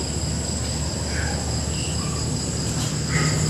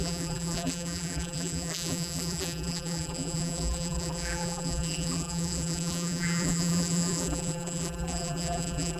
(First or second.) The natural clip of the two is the first